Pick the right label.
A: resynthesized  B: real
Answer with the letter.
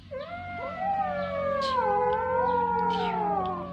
B